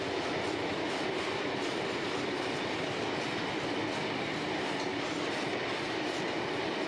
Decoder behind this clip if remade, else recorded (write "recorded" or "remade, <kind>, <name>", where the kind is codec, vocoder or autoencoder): recorded